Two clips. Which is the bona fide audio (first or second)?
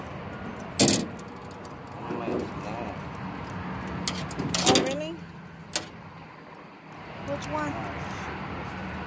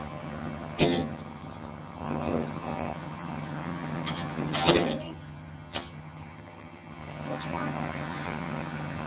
first